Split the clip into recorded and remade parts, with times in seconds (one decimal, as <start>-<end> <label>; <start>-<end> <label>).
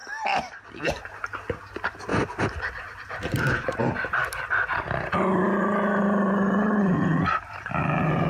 0.0-2.1 recorded; 2.1-3.8 remade; 3.8-5.3 recorded; 5.3-7.8 remade; 7.8-8.3 recorded